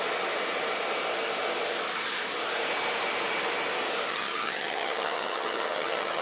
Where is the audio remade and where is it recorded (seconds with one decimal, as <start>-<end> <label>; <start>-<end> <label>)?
0.0-4.1 recorded; 4.1-6.2 remade